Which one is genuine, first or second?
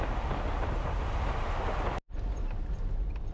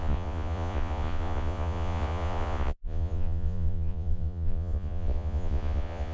first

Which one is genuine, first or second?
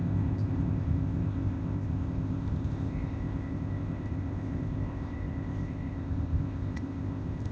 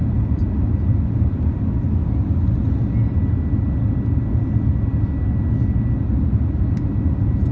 second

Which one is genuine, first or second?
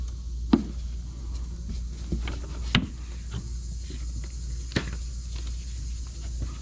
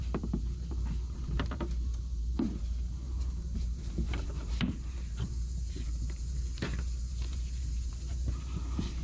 first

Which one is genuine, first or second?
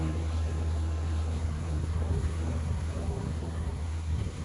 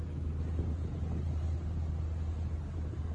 second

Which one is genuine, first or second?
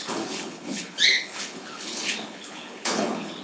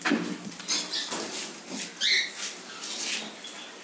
second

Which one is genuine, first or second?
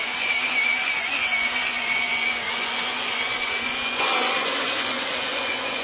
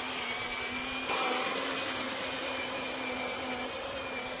second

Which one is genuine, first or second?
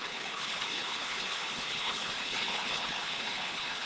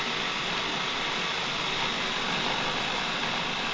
second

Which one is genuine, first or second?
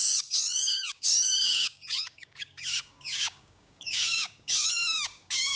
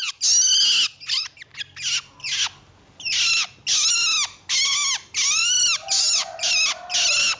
second